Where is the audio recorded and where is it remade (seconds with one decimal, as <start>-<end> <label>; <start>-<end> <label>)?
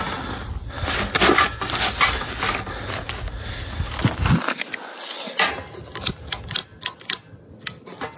0.0-8.2 recorded